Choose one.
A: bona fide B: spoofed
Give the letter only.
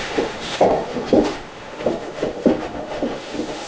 B